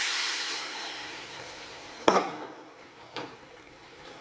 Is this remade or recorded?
remade